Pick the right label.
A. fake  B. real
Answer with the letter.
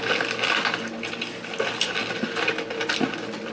B